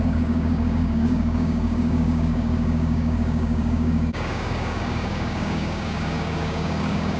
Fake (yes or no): yes